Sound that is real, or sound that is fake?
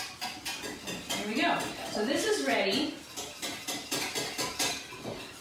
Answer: real